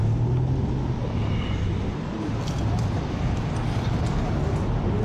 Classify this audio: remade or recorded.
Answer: recorded